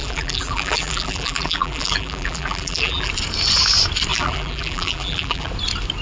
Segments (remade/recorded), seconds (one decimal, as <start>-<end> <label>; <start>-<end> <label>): 0.0-3.1 remade; 3.1-4.1 recorded; 4.1-5.5 remade; 5.5-6.0 recorded